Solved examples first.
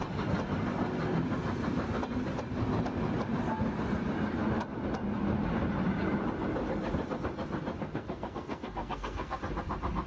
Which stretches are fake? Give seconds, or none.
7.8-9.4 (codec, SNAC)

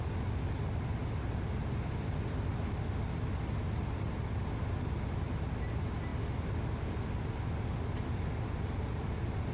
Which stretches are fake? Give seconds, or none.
none